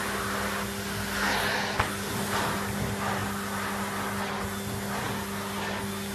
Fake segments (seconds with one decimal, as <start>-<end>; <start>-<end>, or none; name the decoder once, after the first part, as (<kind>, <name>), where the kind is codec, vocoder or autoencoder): none